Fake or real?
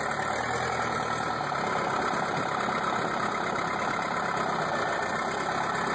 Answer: real